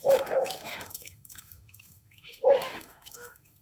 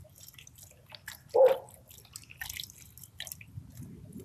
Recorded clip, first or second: second